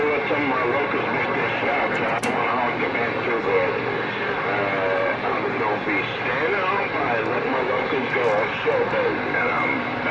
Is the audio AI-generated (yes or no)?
no